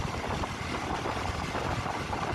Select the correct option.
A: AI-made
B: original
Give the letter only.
B